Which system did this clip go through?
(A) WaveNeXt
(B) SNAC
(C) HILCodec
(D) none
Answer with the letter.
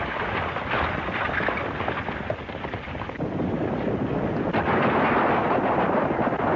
D